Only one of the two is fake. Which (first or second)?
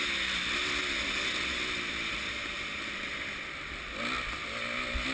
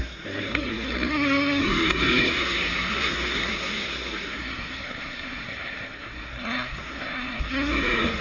second